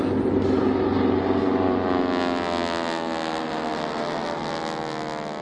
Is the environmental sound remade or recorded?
recorded